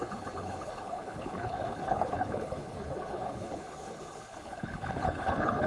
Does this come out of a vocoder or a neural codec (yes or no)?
yes